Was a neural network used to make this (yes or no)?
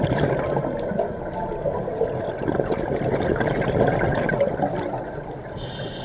no